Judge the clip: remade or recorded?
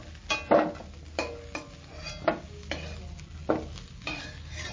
recorded